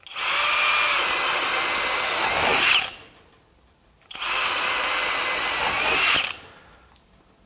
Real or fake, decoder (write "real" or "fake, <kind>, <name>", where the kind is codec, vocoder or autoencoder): real